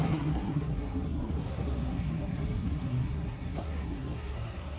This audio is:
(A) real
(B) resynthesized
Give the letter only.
B